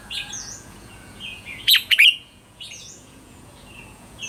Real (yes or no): no